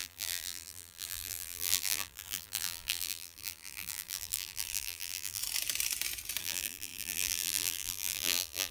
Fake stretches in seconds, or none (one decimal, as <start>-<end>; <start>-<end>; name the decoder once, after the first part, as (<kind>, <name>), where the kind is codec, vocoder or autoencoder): 0.0-5.4 (vocoder, BigVGAN v2); 6.4-8.7